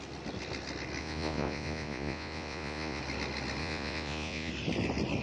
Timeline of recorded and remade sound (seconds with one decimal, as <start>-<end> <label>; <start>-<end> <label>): 0.0-1.0 recorded; 1.0-3.0 remade; 3.0-3.6 recorded; 3.6-4.5 remade; 4.5-5.2 recorded